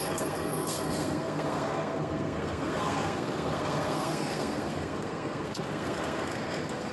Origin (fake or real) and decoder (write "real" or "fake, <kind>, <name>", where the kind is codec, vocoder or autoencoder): fake, codec, SNAC